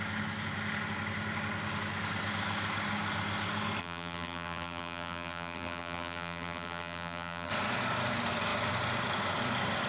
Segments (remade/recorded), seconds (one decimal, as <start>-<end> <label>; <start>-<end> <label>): 0.0-3.8 recorded; 3.8-7.5 remade; 7.5-9.9 recorded